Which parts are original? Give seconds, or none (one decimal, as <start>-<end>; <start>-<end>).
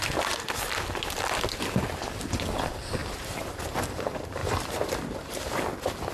0.0-3.0; 3.6-4.4; 5.6-6.1